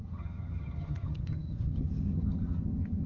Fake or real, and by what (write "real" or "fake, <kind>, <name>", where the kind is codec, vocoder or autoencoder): fake, vocoder, HiFi-GAN